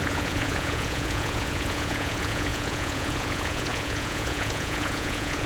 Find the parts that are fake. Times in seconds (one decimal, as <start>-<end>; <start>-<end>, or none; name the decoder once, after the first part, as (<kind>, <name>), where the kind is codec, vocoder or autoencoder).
0.0-5.5 (vocoder, Vocos)